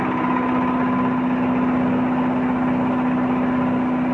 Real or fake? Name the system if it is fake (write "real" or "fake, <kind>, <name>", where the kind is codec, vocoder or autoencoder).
real